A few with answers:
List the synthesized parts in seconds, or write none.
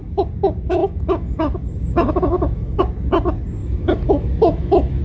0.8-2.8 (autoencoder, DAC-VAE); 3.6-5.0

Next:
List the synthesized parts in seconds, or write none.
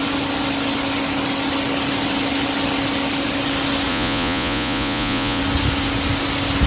3.9-5.4 (vocoder, Vocos)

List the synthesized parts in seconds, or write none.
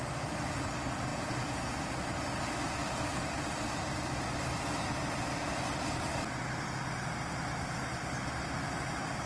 1.1-1.7 (vocoder, Vocos)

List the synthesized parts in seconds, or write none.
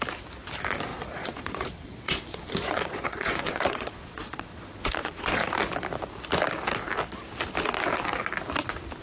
0.9-5.5 (vocoder, Vocos)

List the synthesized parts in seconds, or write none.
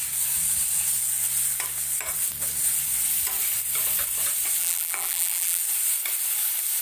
4.6-5.6 (vocoder, BigVGAN v2)